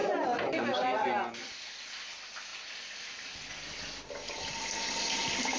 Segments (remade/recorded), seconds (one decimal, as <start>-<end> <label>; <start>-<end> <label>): 0.0-5.6 recorded